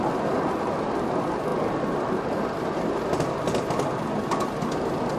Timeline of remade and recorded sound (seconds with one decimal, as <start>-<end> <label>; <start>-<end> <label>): 0.0-5.2 recorded